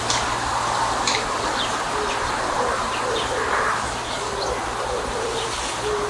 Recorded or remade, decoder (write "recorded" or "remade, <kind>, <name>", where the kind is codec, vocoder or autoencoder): recorded